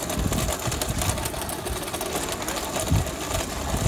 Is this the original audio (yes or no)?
yes